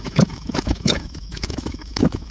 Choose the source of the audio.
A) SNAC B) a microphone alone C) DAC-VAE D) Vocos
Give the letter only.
C